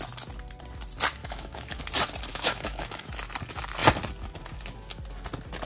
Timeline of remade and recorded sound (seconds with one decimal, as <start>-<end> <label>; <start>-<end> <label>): 0.0-1.2 recorded; 1.2-1.8 remade; 1.8-2.3 recorded; 2.3-3.0 remade; 3.0-5.7 recorded